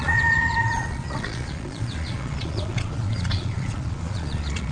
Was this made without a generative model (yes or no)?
no